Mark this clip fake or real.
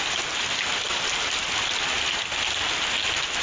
real